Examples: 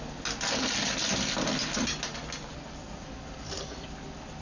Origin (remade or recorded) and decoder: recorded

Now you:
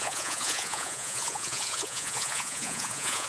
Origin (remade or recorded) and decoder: remade, vocoder, Vocos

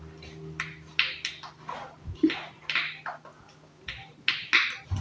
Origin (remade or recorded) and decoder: recorded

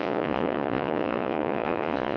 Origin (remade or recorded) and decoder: remade, vocoder, Vocos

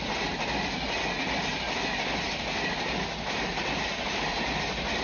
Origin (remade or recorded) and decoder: recorded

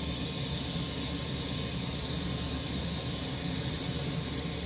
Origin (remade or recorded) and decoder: recorded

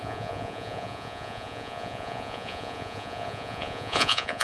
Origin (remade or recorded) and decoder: remade, vocoder, Vocos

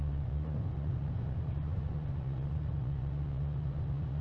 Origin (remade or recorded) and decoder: remade, vocoder, Vocos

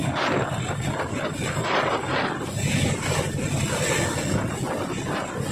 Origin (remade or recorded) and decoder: recorded